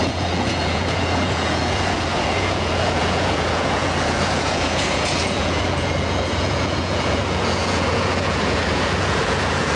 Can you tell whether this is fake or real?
fake